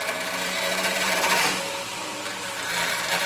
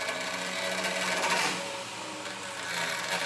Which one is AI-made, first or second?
first